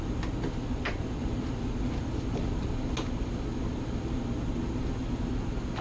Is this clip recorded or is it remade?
recorded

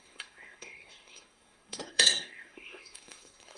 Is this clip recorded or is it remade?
remade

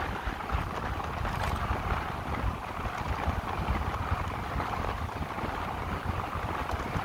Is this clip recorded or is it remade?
recorded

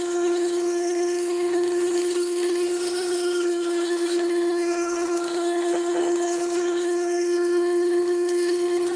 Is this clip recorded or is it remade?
remade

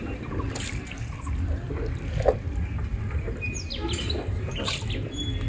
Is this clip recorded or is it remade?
recorded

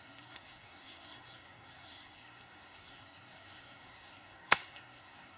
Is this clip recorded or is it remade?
remade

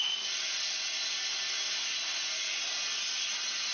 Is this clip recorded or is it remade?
recorded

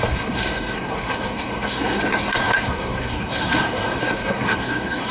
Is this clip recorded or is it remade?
remade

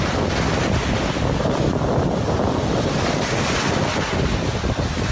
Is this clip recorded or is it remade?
recorded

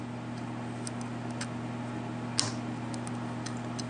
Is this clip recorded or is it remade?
recorded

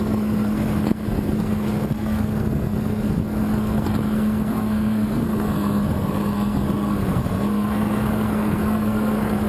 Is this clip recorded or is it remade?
remade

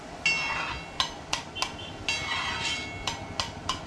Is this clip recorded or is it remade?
recorded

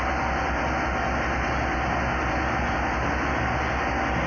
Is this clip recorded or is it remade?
recorded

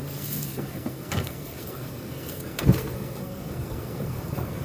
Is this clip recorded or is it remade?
remade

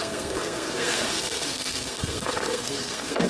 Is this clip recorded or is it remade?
remade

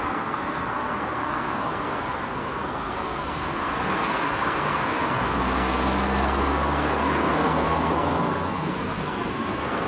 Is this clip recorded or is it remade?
remade